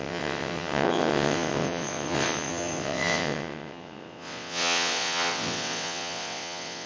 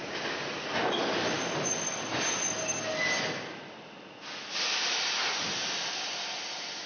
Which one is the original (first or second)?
second